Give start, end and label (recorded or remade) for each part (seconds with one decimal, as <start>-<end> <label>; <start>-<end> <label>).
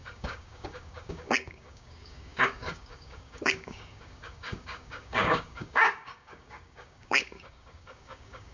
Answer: 0.0-8.5 remade